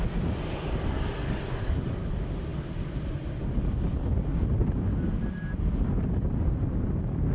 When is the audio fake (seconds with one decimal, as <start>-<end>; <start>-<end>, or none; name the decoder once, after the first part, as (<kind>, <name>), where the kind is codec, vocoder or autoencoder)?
none